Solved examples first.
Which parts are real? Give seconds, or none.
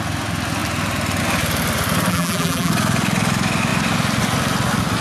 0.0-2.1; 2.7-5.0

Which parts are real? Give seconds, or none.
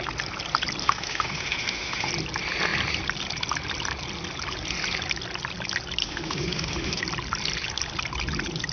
0.0-0.8; 2.1-6.0; 7.0-8.7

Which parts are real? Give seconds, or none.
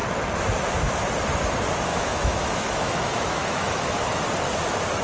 0.0-1.9; 4.2-5.0